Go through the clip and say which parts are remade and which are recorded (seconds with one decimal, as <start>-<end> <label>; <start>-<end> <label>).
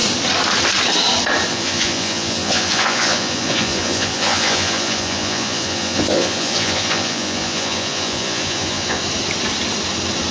0.0-1.5 recorded; 1.5-9.0 remade; 9.0-10.3 recorded